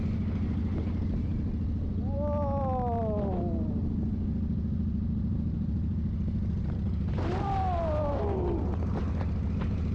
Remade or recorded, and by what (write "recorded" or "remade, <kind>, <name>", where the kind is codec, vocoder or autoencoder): recorded